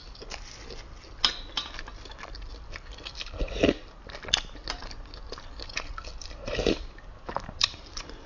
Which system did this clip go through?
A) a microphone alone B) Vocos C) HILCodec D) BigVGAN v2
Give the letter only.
A